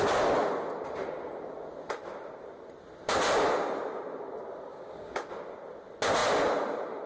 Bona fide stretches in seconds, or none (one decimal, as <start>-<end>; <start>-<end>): 0.0-4.7; 5.3-7.1

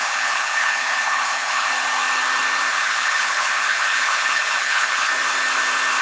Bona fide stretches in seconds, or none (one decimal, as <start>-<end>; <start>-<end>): 1.7-2.7; 5.1-6.0

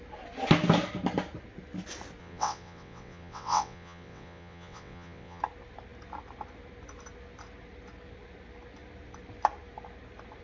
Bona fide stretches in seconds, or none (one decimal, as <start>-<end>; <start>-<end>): 0.0-2.2; 5.4-10.4

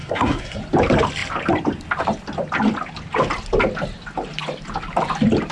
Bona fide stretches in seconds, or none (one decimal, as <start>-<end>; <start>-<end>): 0.6-5.5

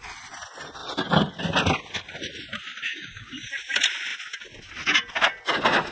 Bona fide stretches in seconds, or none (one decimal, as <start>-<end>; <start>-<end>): 0.0-2.9; 3.5-5.9